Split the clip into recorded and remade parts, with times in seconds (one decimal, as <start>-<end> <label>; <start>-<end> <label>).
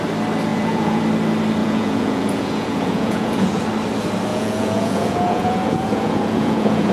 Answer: 0.0-0.5 recorded; 0.5-1.0 remade; 1.0-1.6 recorded; 1.6-3.6 remade; 3.6-4.3 recorded; 4.3-6.9 remade